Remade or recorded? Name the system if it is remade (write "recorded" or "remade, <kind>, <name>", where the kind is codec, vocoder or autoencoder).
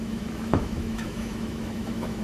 remade, autoencoder, DAC-VAE